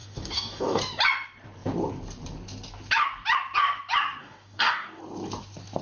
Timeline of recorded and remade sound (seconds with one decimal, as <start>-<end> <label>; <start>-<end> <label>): 0.0-0.8 remade; 0.8-4.2 recorded; 4.2-5.0 remade; 5.0-5.8 recorded